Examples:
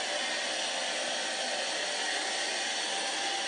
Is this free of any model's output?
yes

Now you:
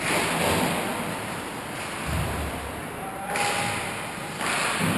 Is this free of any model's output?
yes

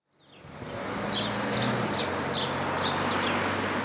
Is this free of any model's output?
yes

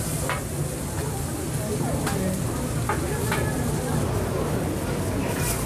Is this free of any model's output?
yes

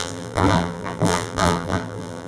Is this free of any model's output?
no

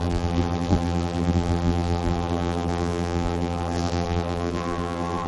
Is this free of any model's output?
no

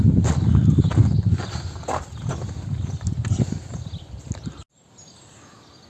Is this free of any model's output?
yes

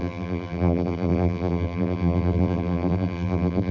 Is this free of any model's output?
no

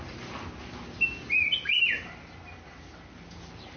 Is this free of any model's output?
yes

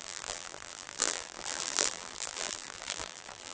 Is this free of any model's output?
no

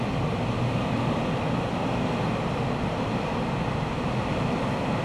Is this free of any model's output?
yes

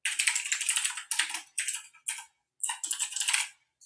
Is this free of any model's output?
yes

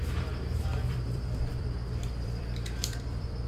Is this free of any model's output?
no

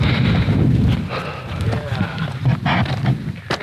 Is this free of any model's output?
yes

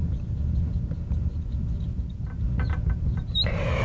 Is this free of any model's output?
yes